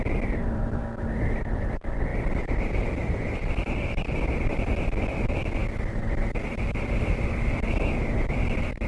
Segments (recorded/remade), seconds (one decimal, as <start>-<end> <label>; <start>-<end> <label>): 0.0-5.6 remade; 5.6-6.5 recorded; 6.5-8.9 remade